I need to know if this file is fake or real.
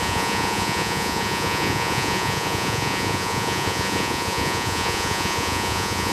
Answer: fake